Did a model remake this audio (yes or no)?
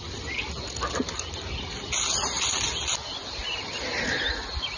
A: no